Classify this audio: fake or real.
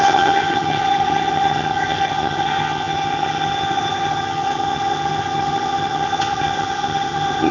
fake